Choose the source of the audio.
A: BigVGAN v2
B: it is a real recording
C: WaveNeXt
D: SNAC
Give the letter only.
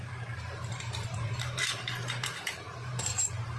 A